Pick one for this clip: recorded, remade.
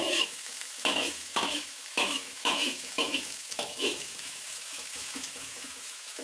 remade